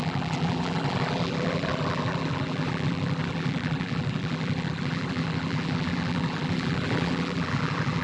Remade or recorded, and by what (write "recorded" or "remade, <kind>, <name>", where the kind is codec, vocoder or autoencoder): remade, vocoder, BigVGAN v2